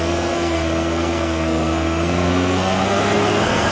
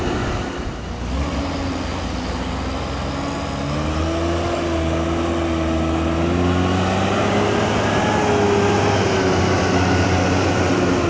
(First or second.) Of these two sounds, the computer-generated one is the first